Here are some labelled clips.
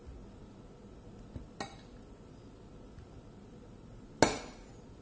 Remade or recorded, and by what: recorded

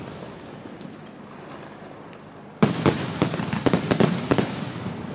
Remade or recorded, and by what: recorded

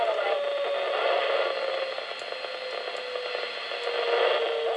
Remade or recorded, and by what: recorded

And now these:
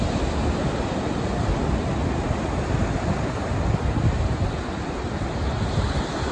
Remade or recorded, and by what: recorded